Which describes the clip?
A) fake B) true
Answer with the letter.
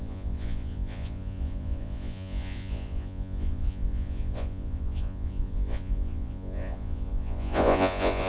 A